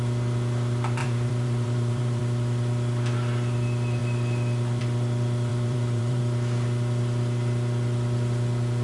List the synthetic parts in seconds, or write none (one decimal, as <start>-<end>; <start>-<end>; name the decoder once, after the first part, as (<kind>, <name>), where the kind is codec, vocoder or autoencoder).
1.0-2.2 (vocoder, BigVGAN v2); 5.5-6.2